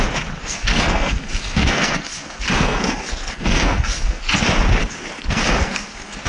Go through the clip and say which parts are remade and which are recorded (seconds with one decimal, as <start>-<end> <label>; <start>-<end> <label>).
0.0-0.4 recorded; 0.4-4.2 remade; 4.2-4.8 recorded; 4.8-6.3 remade